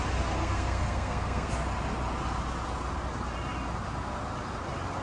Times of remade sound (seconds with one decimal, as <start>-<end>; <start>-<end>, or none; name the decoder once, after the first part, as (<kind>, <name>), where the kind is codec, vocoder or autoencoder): 0.4-1.5 (codec, SNAC)